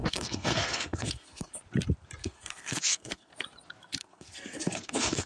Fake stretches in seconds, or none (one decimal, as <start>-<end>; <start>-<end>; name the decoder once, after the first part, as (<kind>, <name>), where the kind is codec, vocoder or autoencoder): 0.0-1.5 (codec, SNAC); 2.2-3.3; 4.0-5.3